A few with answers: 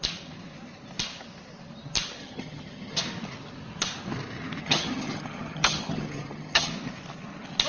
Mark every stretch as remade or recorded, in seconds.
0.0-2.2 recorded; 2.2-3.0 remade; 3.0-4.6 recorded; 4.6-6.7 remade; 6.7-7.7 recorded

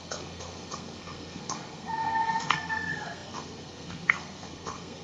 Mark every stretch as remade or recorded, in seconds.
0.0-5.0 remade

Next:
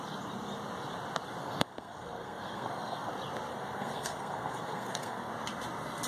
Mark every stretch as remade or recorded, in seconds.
0.0-1.4 recorded; 1.4-3.1 remade; 3.1-3.5 recorded; 3.5-5.3 remade; 5.3-6.1 recorded

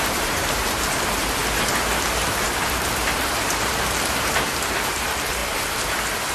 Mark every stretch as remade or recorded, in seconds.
0.0-1.4 remade; 1.4-2.1 recorded; 2.1-5.4 remade; 5.4-6.3 recorded

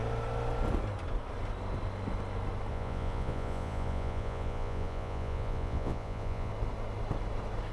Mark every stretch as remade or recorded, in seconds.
0.0-2.7 recorded; 2.7-6.5 remade; 6.5-7.7 recorded

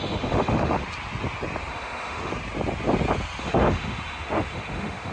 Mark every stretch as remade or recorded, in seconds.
0.0-0.8 remade; 0.8-1.7 recorded; 1.7-2.3 remade; 2.3-3.4 recorded; 3.4-5.1 remade

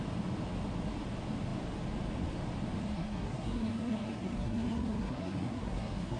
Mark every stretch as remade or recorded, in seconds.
0.0-2.8 recorded; 2.8-6.2 remade

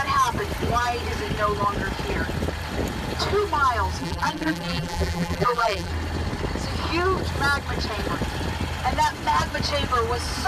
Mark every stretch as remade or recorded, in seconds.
0.0-4.0 recorded; 4.0-5.9 remade; 5.9-10.5 recorded